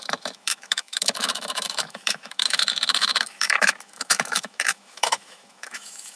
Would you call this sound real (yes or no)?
no